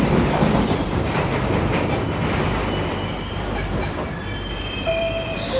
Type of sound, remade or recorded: remade